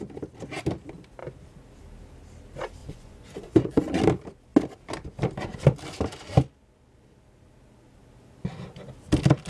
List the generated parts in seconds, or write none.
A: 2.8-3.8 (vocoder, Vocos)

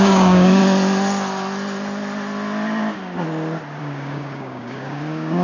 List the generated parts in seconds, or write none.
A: 0.0-0.6 (codec, DAC); 3.8-5.4

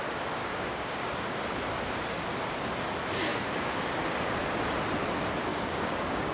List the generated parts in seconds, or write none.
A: 0.4-1.4 (codec, DAC); 5.5-6.3